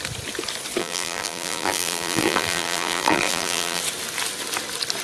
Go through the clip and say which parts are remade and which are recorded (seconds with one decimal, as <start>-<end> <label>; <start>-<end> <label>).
0.0-0.8 recorded; 0.8-3.8 remade; 3.8-5.0 recorded